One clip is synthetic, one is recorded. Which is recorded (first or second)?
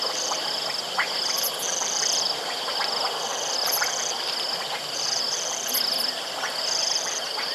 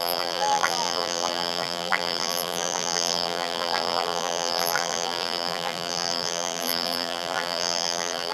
first